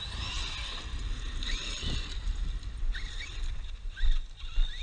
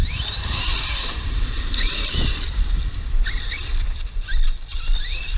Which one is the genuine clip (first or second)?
first